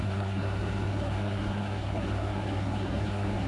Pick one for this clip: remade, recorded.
remade